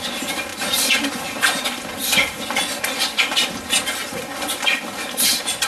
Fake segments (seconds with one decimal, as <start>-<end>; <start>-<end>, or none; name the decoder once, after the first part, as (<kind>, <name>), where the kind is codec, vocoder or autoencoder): none